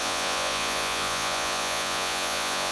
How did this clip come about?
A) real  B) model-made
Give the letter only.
B